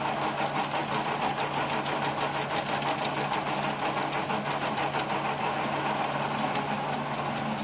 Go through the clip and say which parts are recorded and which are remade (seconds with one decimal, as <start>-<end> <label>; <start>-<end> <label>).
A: 0.0-7.6 recorded